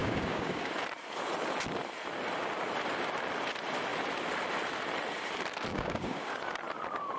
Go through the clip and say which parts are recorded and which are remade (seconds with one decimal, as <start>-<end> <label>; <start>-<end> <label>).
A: 0.0-0.7 remade; 0.7-5.7 recorded; 5.7-6.3 remade; 6.3-7.2 recorded